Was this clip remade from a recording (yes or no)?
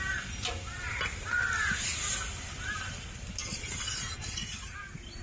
no